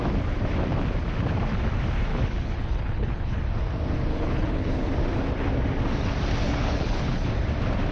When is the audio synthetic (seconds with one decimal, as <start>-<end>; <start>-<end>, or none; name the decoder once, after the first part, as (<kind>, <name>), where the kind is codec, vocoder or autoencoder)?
2.1-3.4 (codec, HILCodec); 4.1-4.9; 6.4-7.3